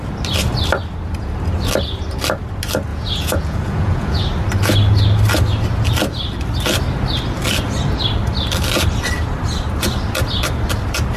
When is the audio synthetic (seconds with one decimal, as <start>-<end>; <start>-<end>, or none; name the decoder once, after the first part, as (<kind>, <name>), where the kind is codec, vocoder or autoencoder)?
2.9-4.2 (vocoder, Vocos)